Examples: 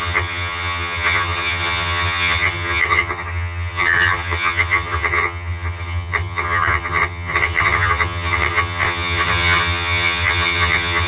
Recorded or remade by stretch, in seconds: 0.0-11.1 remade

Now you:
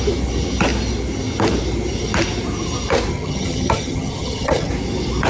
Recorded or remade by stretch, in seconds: 0.0-3.1 recorded; 3.1-4.7 remade; 4.7-5.3 recorded

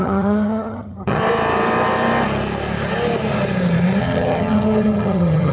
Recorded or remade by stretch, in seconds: 0.0-1.2 remade; 1.2-4.0 recorded; 4.0-5.5 remade

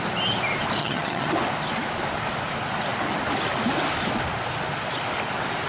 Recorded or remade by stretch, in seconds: 0.0-0.8 recorded; 0.8-1.3 remade; 1.3-5.7 recorded

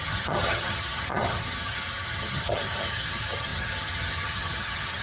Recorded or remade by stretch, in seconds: 0.0-5.0 remade

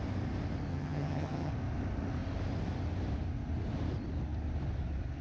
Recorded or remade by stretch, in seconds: 0.0-0.7 recorded; 0.7-1.5 remade; 1.5-5.2 recorded

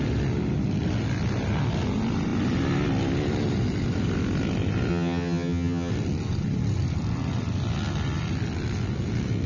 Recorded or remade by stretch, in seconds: 0.0-4.9 recorded; 4.9-5.9 remade; 5.9-9.5 recorded